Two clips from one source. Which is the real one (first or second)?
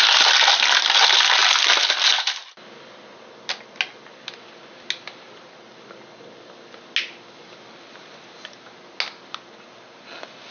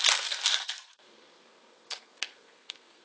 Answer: first